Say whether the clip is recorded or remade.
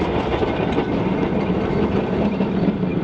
recorded